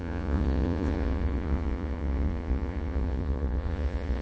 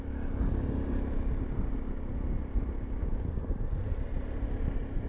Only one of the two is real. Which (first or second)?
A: second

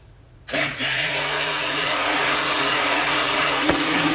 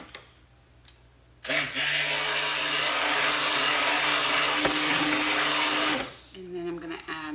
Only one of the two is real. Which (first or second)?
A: second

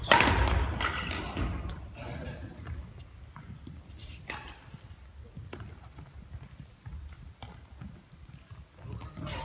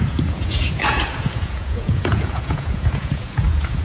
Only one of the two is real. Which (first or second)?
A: first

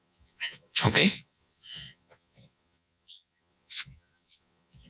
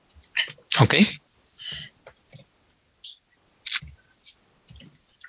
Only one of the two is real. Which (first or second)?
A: second